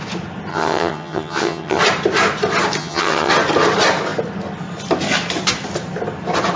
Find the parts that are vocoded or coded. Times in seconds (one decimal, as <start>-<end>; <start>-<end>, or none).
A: 0.5-1.8; 2.8-3.3